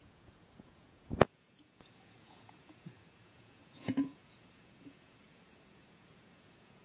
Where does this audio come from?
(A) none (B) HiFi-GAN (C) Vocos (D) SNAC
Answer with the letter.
C